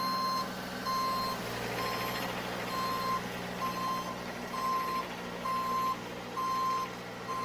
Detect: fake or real real